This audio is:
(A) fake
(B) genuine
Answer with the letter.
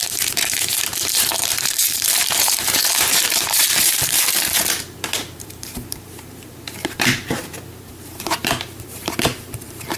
A